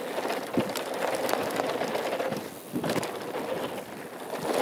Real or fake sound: real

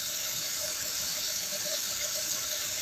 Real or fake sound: fake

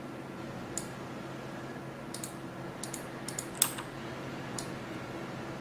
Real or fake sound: real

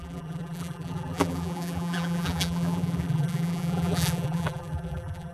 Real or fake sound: fake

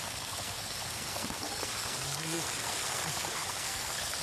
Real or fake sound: fake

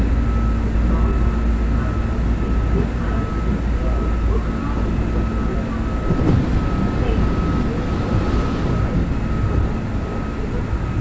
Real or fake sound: real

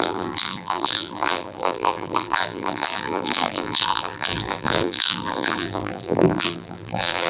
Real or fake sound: fake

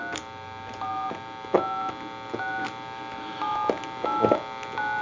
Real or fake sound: real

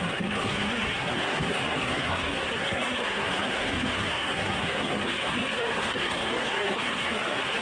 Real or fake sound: fake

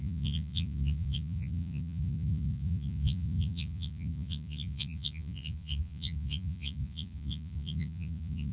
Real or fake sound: fake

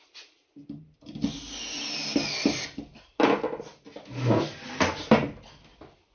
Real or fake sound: real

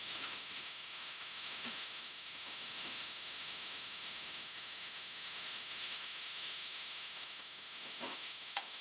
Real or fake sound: fake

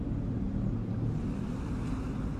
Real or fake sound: real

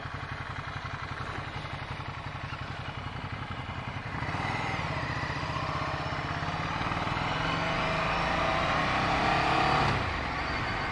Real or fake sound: real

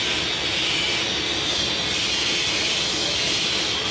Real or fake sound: real